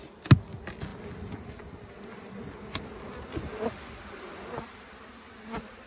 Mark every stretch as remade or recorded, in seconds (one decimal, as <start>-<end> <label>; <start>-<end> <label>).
0.0-5.9 recorded